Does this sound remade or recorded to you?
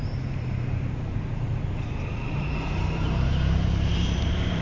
remade